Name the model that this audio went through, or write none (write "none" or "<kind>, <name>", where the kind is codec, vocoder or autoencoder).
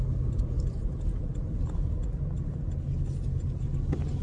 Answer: none